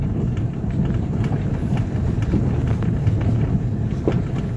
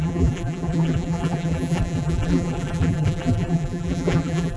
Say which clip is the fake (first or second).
second